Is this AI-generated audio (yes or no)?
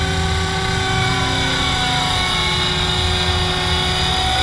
no